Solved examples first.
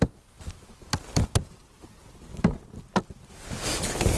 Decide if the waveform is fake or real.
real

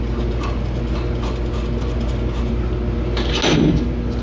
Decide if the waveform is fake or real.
real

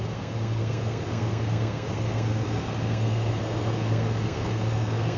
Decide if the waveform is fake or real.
fake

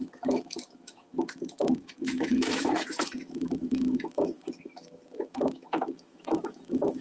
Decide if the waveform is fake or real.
fake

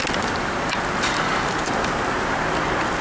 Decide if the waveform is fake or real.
real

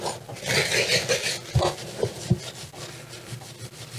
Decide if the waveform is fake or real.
real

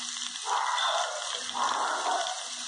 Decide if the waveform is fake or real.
real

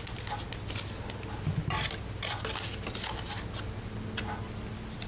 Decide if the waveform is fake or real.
real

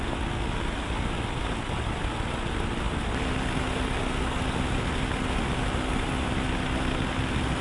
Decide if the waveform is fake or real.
real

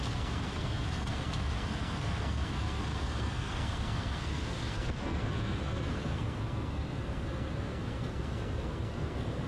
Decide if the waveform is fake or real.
fake